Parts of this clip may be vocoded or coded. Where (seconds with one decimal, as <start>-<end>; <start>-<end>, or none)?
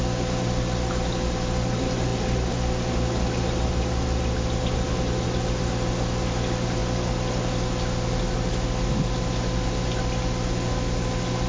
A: none